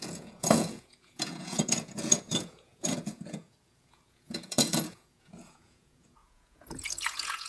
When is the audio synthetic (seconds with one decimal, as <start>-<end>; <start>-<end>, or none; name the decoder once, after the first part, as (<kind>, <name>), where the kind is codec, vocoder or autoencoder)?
0.0-7.5 (vocoder, Vocos)